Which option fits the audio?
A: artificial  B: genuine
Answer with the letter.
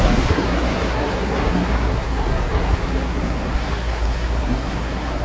A